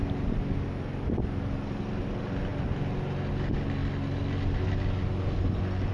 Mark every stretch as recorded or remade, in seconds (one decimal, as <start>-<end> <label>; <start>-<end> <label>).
0.0-5.9 recorded